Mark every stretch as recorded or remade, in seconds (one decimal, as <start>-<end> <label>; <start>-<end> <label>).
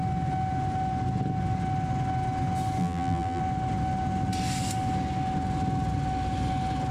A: 0.0-2.8 recorded; 2.8-3.4 remade; 3.4-6.9 recorded